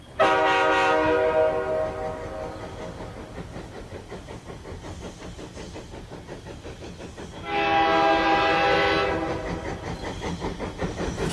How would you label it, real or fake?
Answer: real